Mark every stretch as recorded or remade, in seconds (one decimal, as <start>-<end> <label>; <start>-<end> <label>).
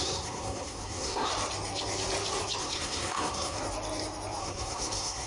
0.0-1.3 remade; 1.3-2.6 recorded; 2.6-3.6 remade; 3.6-4.4 recorded; 4.4-5.3 remade